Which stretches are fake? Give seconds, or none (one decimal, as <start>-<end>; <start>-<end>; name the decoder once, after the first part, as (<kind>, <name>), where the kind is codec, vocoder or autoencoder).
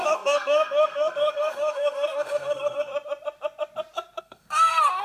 0.0-2.9 (codec, SNAC); 4.2-5.0